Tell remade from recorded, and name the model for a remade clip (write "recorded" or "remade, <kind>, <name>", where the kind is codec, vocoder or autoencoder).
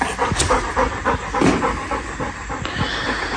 recorded